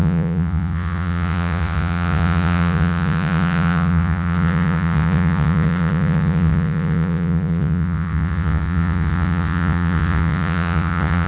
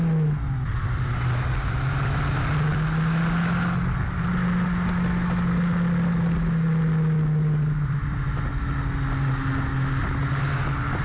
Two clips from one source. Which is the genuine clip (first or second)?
second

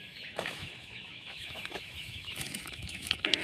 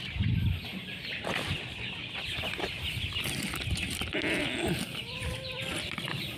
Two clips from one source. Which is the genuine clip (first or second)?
second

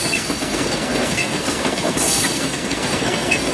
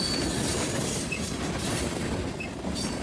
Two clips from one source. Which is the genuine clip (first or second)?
second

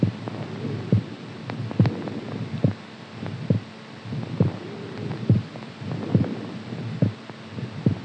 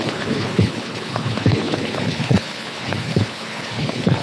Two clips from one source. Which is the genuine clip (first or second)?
first